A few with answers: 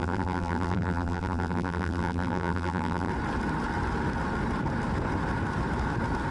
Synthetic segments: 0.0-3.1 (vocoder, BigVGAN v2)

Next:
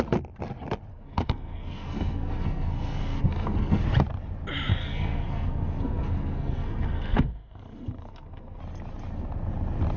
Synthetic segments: 0.9-3.8 (codec, SNAC); 4.7-8.6

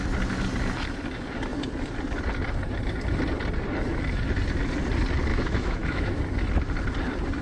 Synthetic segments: 5.3-6.2 (autoencoder, DAC-VAE)

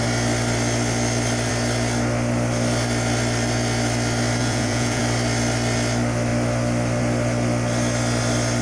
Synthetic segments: 4.4-5.0 (vocoder, Vocos)

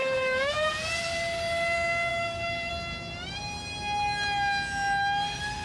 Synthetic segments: 0.0-0.7 (autoencoder, DAC-VAE); 2.1-2.7

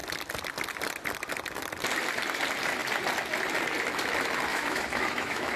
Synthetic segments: 4.5-5.6 (autoencoder, DAC-VAE)

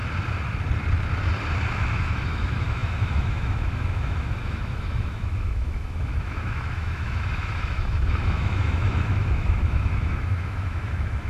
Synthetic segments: 1.9-11.3 (autoencoder, DAC-VAE)

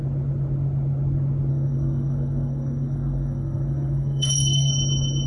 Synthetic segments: 1.5-4.7 (codec, SNAC)